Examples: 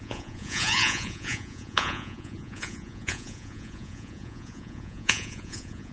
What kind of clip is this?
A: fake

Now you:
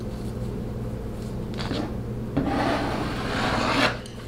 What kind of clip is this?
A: real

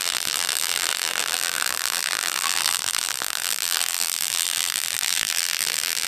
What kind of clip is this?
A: fake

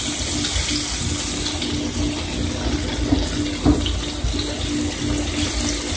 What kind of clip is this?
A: real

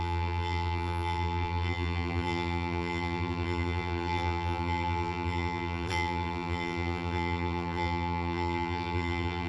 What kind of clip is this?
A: fake